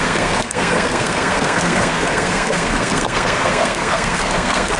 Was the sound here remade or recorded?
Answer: remade